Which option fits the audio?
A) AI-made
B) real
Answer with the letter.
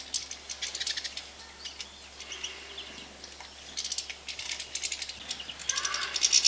B